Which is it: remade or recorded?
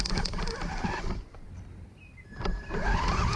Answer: remade